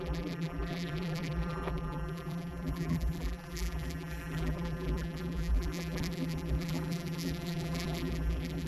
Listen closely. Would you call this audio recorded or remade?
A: remade